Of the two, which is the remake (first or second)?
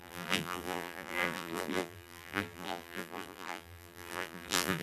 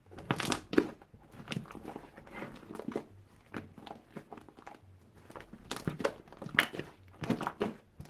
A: first